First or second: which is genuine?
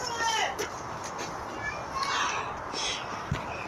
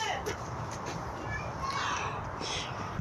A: first